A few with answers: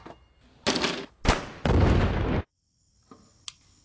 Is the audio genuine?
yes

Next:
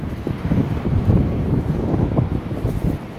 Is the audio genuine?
yes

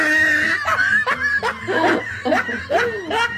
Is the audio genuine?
yes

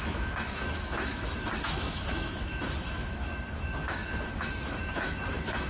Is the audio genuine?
no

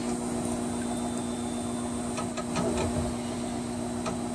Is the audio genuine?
yes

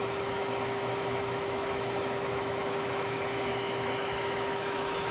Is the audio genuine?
no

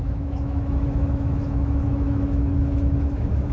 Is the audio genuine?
no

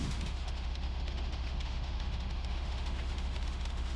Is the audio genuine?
no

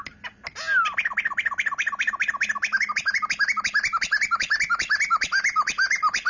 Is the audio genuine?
yes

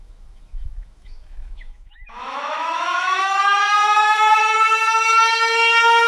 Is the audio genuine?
no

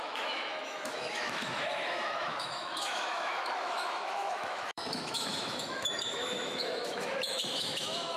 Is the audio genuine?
no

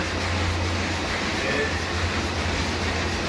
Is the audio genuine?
yes